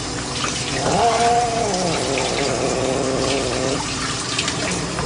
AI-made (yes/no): no